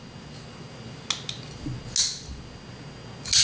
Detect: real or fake real